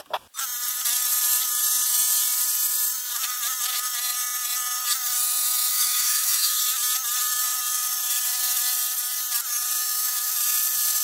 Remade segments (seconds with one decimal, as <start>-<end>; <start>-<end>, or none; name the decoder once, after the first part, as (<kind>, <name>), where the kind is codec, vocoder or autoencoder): 5.7-6.6 (autoencoder, DAC-VAE); 9.8-10.3